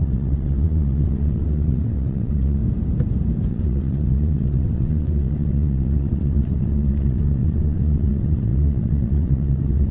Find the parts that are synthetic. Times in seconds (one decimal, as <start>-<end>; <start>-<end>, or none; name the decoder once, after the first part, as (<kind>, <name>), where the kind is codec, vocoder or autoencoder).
0.0-2.6 (vocoder, WaveNeXt); 3.5-9.9